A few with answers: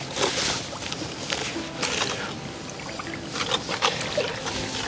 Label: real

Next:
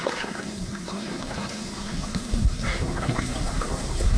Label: fake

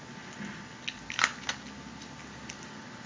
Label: real